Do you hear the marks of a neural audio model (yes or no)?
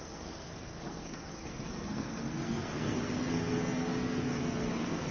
yes